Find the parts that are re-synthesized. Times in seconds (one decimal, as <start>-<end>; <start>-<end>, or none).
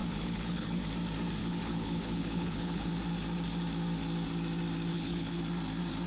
0.0-0.8; 1.4-2.9; 4.9-5.4